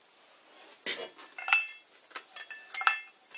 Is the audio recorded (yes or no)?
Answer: yes